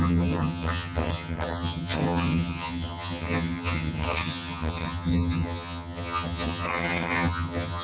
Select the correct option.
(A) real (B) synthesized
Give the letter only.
B